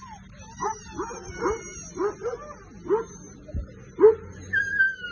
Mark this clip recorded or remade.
recorded